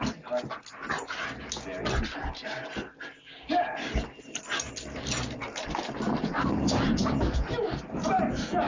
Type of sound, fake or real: real